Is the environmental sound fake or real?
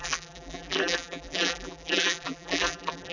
fake